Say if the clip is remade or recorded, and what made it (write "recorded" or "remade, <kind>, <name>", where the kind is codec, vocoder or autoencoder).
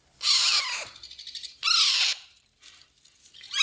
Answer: recorded